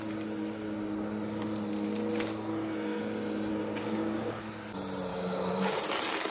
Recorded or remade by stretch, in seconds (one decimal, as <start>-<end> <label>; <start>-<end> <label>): 0.0-2.5 recorded; 2.5-3.0 remade; 3.0-3.5 recorded; 3.5-4.4 remade; 4.4-5.1 recorded; 5.1-5.8 remade; 5.8-6.3 recorded